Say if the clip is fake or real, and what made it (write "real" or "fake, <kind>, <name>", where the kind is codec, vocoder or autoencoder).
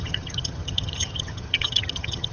fake, vocoder, HiFi-GAN